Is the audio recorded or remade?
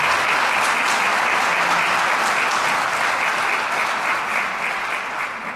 recorded